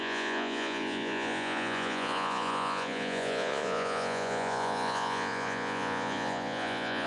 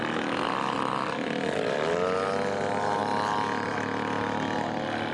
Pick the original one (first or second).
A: second